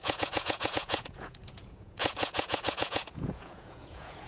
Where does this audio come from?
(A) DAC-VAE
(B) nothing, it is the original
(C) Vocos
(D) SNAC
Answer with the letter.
C